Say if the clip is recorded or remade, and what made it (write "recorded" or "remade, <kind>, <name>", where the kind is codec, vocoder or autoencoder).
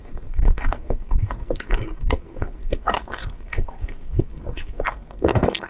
remade, codec, SNAC